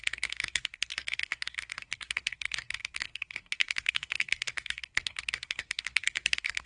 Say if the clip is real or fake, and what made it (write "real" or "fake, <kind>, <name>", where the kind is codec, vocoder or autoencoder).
fake, codec, SNAC